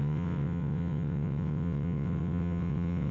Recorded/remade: remade